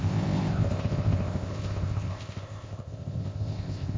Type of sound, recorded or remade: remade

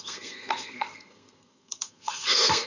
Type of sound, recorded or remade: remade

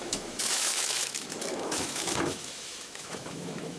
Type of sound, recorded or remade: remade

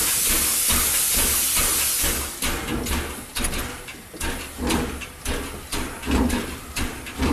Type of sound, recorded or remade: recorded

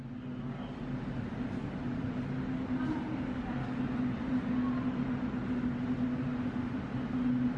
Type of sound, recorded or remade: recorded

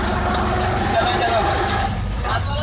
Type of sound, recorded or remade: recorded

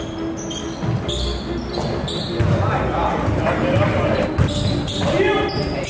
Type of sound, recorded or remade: recorded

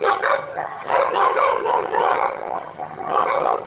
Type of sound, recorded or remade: remade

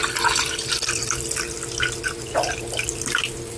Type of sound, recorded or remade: recorded